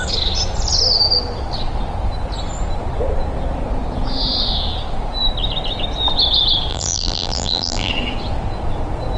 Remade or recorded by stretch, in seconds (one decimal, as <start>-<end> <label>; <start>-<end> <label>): 0.0-6.7 recorded; 6.7-7.9 remade; 7.9-9.2 recorded